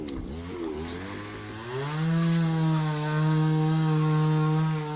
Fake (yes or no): no